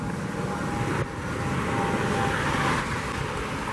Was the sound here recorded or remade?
recorded